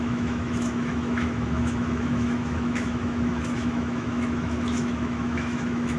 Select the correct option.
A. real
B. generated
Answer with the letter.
B